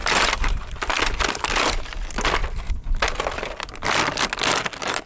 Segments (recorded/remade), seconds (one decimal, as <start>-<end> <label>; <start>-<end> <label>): 0.0-5.1 recorded